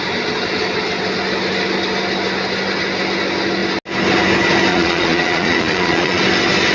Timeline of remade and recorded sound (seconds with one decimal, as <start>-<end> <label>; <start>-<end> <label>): 0.0-4.7 recorded; 4.7-6.2 remade; 6.2-6.7 recorded